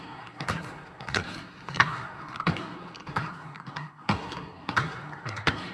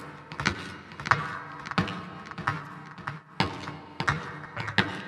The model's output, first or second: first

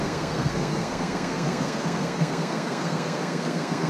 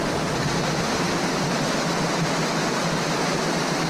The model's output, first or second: first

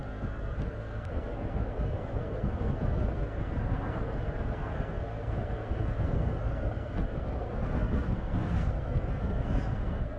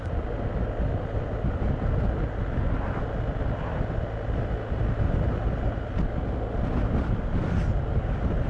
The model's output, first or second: first